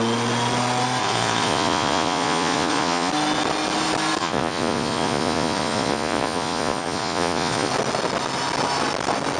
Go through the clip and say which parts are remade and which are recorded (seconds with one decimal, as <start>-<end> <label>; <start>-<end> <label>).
0.0-1.0 recorded; 1.0-3.1 remade; 3.1-4.2 recorded; 4.2-7.7 remade; 7.7-9.4 recorded